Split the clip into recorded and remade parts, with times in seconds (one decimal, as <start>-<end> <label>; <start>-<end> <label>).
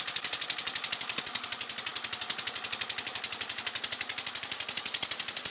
0.0-5.5 recorded